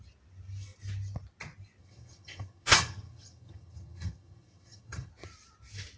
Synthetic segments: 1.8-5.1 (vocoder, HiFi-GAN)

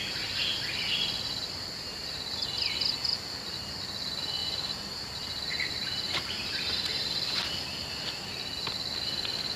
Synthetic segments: 2.0-2.5 (vocoder, BigVGAN v2); 4.4-7.4

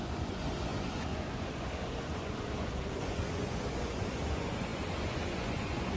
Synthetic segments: 0.0-6.0 (vocoder, Vocos)

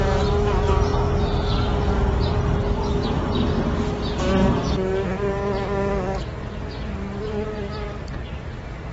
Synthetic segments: none

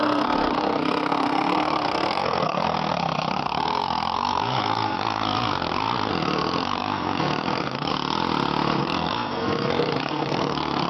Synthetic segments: 0.0-7.9 (codec, SNAC); 8.8-10.9

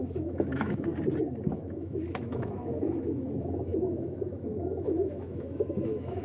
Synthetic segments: 0.0-0.9 (autoencoder, DAC-VAE); 1.5-6.2

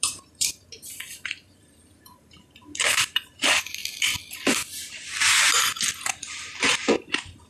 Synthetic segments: 0.0-3.8 (vocoder, BigVGAN v2); 6.1-7.5

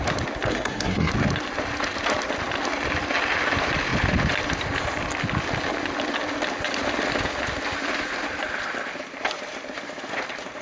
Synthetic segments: 0.5-1.1 (codec, SNAC)